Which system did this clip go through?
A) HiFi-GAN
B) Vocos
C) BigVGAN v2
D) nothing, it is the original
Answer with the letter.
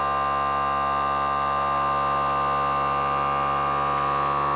D